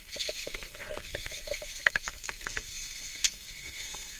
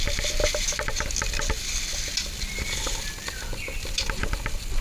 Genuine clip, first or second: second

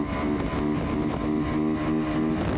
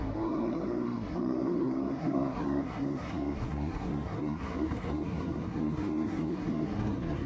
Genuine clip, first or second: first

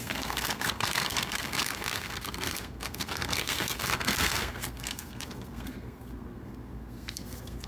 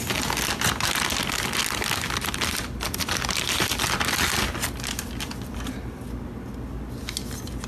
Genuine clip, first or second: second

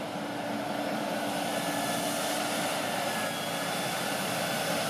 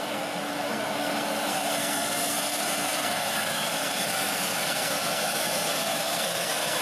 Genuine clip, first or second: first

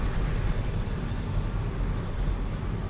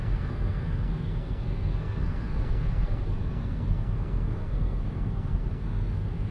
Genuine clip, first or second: first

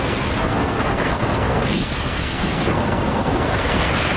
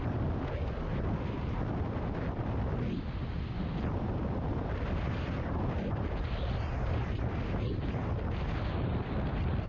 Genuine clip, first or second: second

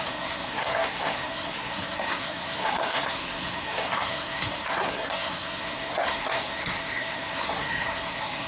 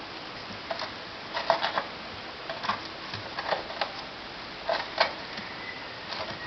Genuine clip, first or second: second